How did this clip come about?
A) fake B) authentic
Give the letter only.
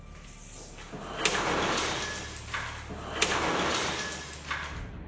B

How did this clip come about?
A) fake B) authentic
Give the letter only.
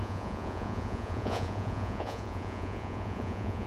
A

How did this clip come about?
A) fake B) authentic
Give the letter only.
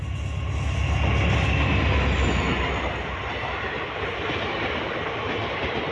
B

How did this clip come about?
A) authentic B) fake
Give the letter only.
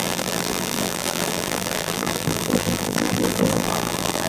B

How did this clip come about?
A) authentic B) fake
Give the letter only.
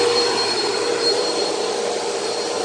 B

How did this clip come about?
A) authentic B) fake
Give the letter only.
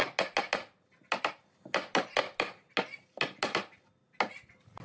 A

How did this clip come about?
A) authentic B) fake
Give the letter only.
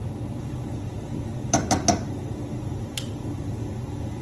A